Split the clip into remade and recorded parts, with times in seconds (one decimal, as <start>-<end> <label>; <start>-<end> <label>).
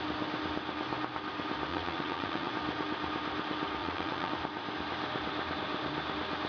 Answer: 0.0-1.7 recorded; 1.7-2.5 remade; 2.5-3.8 recorded; 3.8-4.3 remade; 4.3-6.5 recorded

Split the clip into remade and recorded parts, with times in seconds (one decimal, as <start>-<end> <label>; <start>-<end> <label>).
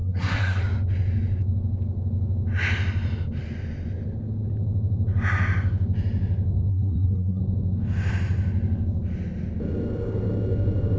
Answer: 0.0-0.6 remade; 0.6-6.7 recorded; 6.7-7.4 remade; 7.4-11.0 recorded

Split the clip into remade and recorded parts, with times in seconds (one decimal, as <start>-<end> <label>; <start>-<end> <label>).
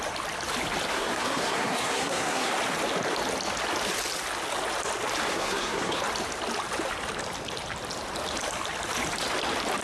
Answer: 0.0-0.9 recorded; 0.9-2.5 remade; 2.5-5.3 recorded; 5.3-6.0 remade; 6.0-9.8 recorded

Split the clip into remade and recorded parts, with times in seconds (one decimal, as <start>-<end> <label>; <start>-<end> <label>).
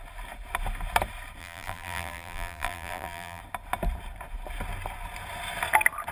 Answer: 0.0-1.4 recorded; 1.4-3.4 remade; 3.4-6.1 recorded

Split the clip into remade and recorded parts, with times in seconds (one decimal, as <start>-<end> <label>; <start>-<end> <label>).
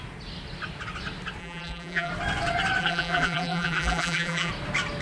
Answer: 0.0-1.4 recorded; 1.4-2.1 remade; 2.1-2.8 recorded; 2.8-4.5 remade; 4.5-5.0 recorded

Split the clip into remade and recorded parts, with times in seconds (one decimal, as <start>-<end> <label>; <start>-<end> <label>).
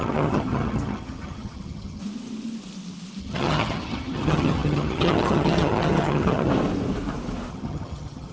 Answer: 0.0-2.0 remade; 2.0-3.2 recorded; 3.2-6.5 remade; 6.5-7.5 recorded; 7.5-8.3 remade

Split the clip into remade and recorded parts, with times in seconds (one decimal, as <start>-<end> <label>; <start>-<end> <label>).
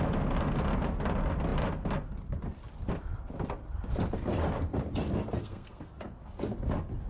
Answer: 0.0-5.4 recorded; 5.4-5.9 remade; 5.9-7.1 recorded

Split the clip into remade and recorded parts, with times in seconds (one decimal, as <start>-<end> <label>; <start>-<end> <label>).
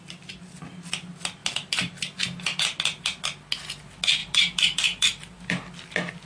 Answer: 0.0-4.2 recorded; 4.2-5.6 remade; 5.6-6.3 recorded